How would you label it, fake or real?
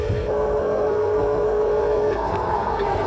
fake